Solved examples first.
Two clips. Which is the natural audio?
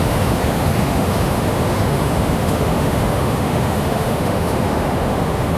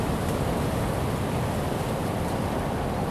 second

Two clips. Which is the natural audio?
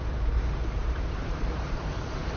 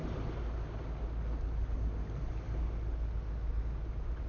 second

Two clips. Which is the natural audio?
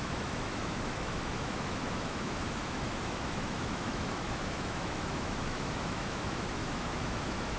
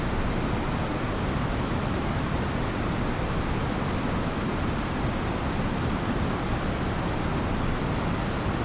second